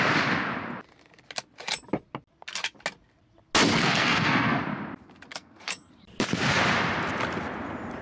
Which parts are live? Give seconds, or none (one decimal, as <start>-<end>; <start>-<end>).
0.0-3.7; 4.6-5.3; 5.9-8.0